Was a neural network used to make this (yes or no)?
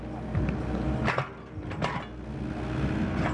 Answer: no